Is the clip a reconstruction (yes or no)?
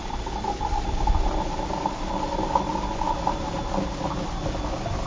no